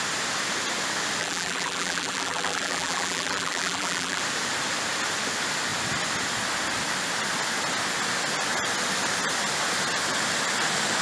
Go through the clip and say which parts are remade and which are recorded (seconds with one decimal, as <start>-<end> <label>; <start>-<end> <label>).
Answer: 0.0-1.2 recorded; 1.2-4.2 remade; 4.2-11.0 recorded